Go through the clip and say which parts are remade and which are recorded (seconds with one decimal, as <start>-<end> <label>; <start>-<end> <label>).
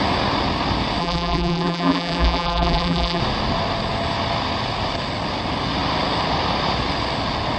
0.0-1.0 recorded; 1.0-3.2 remade; 3.2-7.6 recorded